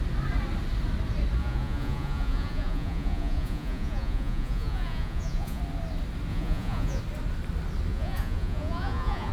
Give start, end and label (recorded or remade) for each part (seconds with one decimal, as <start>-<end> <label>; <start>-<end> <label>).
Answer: 0.0-1.4 recorded; 1.4-5.6 remade; 5.6-6.3 recorded; 6.3-7.0 remade; 7.0-7.9 recorded; 7.9-9.3 remade